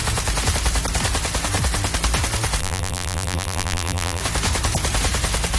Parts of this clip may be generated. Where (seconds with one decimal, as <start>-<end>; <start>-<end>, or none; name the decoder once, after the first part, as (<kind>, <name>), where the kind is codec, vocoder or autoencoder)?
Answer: 2.6-4.2 (vocoder, BigVGAN v2)

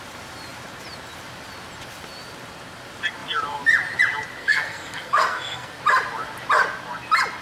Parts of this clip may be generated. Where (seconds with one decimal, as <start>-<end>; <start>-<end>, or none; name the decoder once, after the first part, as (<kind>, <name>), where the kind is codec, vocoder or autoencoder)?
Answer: 4.4-5.8 (codec, SNAC)